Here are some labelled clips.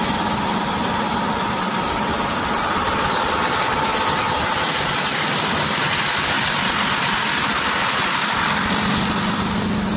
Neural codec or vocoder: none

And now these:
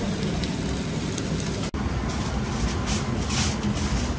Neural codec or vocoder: none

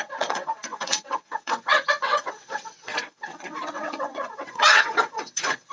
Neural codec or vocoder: vocoder, WaveNeXt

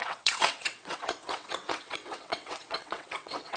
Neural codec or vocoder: vocoder, WaveNeXt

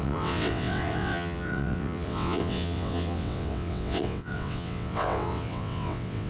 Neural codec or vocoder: vocoder, WaveNeXt